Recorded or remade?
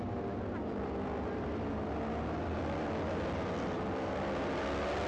recorded